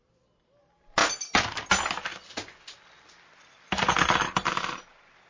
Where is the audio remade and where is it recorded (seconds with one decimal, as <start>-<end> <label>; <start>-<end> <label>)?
0.0-5.3 recorded

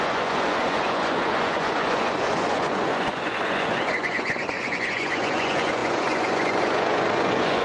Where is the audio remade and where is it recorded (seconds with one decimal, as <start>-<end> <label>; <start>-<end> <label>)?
0.0-7.6 remade